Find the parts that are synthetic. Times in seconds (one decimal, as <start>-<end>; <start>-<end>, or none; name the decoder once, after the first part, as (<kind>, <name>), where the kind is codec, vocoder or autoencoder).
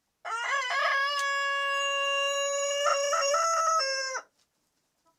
none